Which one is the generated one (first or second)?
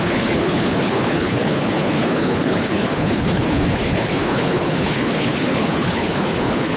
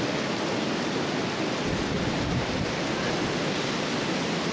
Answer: first